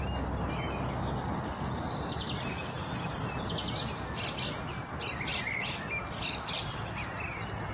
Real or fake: real